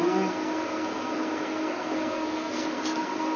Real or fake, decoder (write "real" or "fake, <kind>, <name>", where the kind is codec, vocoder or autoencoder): fake, codec, SNAC